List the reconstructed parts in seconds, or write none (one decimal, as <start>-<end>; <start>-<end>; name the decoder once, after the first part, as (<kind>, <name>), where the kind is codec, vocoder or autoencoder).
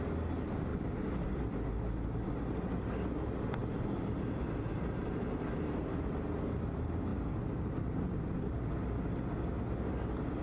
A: none